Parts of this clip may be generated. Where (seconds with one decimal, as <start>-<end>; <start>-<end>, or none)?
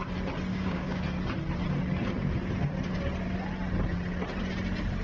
0.5-1.0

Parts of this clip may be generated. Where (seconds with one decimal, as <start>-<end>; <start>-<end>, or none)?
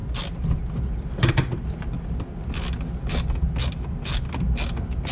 none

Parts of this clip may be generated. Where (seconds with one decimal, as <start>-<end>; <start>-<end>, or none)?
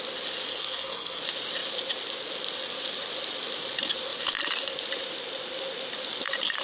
0.5-1.2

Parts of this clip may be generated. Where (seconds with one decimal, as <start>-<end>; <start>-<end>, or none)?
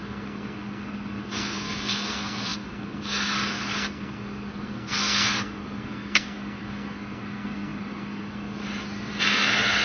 0.0-8.6; 9.2-9.8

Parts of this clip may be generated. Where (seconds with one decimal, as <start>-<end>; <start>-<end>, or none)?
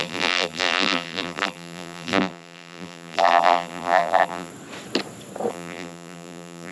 0.0-4.5; 5.5-6.7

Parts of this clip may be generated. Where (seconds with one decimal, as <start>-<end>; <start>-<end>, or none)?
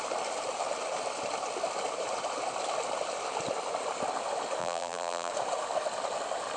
4.6-5.3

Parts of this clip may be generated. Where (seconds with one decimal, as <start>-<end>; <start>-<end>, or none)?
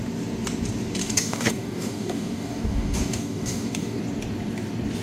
1.0-4.0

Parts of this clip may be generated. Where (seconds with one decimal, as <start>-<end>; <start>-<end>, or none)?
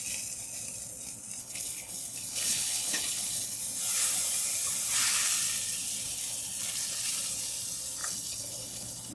1.4-3.6; 8.0-9.1